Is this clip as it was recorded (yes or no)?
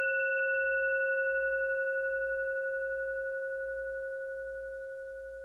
yes